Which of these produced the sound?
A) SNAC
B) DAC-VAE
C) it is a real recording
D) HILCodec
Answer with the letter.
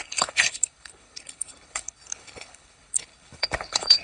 D